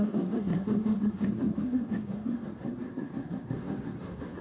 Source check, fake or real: fake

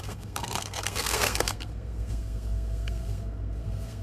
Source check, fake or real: fake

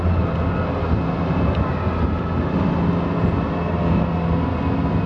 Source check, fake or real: real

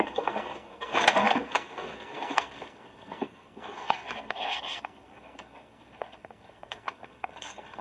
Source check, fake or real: fake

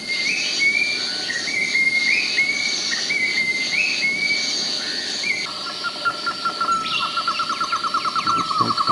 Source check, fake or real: real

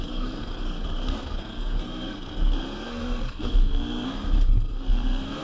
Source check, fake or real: fake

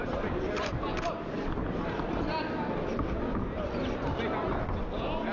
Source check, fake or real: real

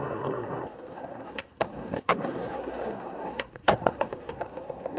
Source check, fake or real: fake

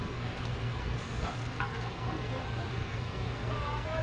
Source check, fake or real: fake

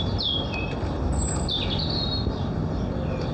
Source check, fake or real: real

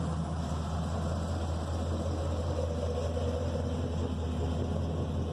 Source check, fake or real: real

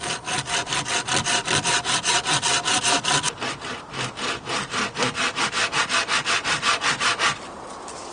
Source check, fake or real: real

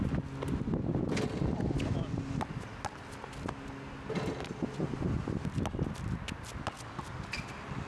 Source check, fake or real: real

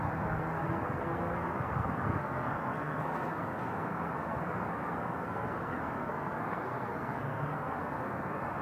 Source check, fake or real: fake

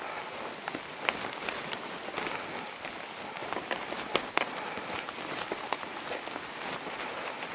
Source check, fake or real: real